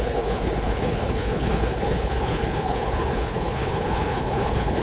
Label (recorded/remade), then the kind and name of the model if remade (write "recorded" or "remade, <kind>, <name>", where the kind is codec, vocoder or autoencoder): remade, codec, HILCodec